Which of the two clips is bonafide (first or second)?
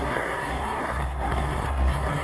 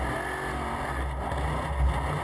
second